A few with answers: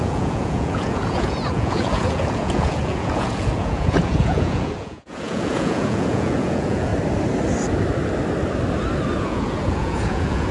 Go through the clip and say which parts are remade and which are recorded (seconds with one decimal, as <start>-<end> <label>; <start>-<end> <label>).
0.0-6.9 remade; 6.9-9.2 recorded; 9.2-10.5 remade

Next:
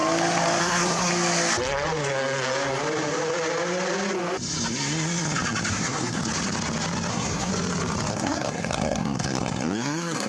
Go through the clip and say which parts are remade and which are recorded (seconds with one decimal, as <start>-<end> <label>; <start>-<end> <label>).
0.0-0.6 recorded; 0.6-1.1 remade; 1.1-5.7 recorded; 5.7-6.2 remade; 6.2-7.1 recorded; 7.1-7.5 remade; 7.5-8.1 recorded; 8.1-10.3 remade

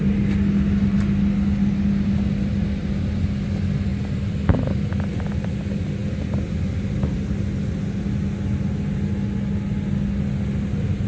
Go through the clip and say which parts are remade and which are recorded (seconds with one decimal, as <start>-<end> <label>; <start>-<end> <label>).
0.0-11.1 recorded

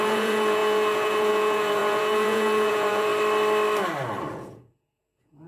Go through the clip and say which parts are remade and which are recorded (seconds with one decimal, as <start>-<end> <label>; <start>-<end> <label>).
0.0-3.1 remade; 3.1-4.3 recorded; 4.3-5.5 remade

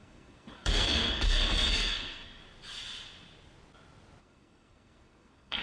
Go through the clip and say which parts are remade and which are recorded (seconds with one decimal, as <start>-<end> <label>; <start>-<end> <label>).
0.0-2.4 remade; 2.4-4.2 recorded; 4.2-5.6 remade

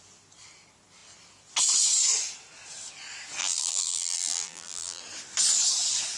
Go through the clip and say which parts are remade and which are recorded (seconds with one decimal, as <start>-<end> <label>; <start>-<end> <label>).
0.0-3.4 recorded; 3.4-5.0 remade; 5.0-6.2 recorded

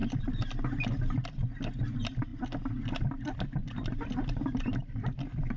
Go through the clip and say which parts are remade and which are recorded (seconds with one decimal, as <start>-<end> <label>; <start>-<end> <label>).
0.0-5.6 recorded